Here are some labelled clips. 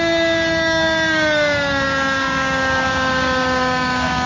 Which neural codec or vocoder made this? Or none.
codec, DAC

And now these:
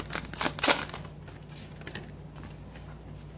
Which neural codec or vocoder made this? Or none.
none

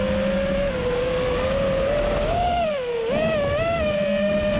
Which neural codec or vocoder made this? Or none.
none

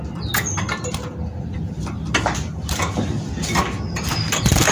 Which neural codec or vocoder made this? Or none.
none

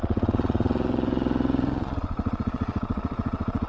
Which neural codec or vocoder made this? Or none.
vocoder, Vocos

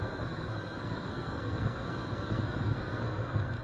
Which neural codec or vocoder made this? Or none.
codec, SNAC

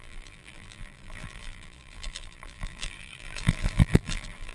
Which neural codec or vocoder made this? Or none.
vocoder, BigVGAN v2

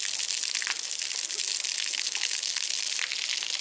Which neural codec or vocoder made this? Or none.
none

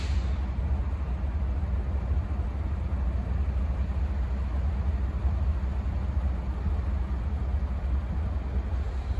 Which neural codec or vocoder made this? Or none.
none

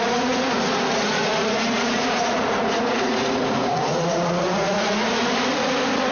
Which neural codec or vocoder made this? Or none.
vocoder, Vocos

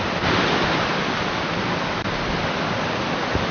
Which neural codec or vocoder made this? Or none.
none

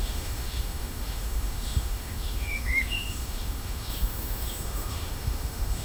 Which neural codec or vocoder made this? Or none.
autoencoder, DAC-VAE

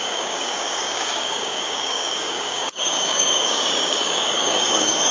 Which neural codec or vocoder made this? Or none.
codec, DAC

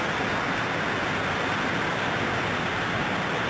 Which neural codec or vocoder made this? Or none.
none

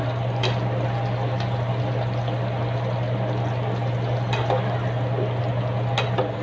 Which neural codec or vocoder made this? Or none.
none